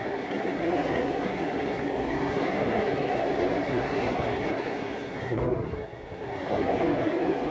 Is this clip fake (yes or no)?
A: yes